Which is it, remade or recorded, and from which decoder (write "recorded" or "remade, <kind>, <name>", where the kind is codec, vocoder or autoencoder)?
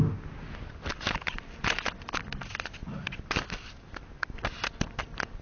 recorded